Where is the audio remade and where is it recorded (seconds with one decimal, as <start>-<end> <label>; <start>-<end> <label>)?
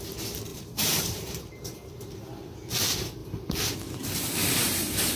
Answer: 0.0-0.5 recorded; 0.5-2.1 remade; 2.1-3.2 recorded; 3.2-3.7 remade; 3.7-4.4 recorded; 4.4-5.2 remade